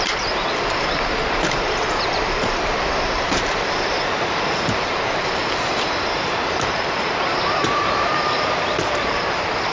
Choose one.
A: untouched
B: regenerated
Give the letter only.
B